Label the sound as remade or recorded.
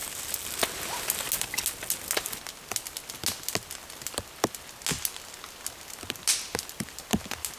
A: recorded